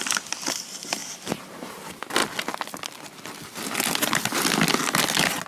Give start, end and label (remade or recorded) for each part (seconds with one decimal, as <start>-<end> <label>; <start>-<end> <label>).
0.0-5.5 recorded